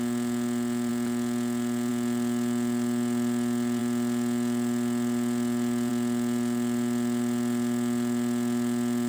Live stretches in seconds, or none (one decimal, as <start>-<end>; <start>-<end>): 0.0-9.1